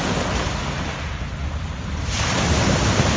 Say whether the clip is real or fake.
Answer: real